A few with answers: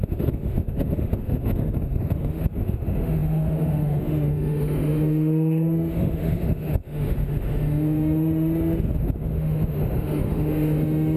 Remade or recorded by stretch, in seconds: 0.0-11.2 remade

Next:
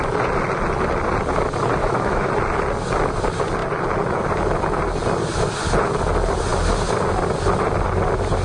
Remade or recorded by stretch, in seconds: 0.0-1.8 recorded; 1.8-2.3 remade; 2.3-8.4 recorded